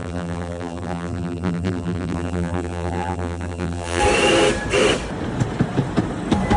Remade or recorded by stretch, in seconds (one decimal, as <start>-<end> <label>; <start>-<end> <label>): 0.0-4.0 remade; 4.0-6.6 recorded